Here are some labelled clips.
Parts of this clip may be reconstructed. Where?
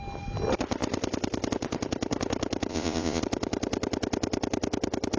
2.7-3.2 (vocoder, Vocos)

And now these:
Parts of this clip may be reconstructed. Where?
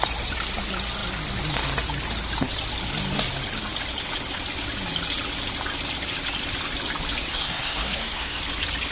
7.3-8.4 (codec, SNAC)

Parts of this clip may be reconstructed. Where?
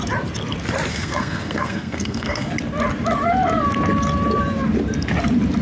0.9-2.5 (codec, SNAC)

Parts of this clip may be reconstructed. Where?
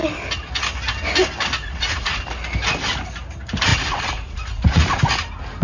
1.6-2.2 (vocoder, Vocos); 3.7-4.9